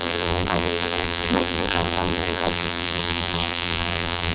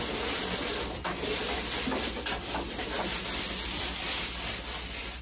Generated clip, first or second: first